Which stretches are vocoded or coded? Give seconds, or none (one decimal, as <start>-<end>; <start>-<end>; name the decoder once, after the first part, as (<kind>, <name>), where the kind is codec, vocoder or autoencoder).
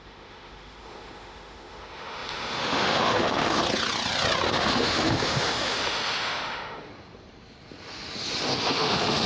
0.0-3.6 (autoencoder, DAC-VAE); 4.5-6.9; 8.7-9.3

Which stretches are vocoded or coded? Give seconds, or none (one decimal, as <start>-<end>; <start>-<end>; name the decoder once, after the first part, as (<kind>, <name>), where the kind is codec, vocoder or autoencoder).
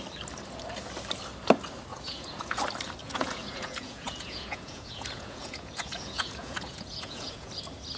1.9-2.6 (vocoder, Vocos); 3.0-7.5